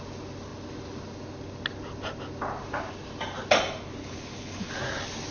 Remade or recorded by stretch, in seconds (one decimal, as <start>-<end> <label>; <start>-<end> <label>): 0.0-4.0 recorded; 4.0-4.7 remade; 4.7-5.3 recorded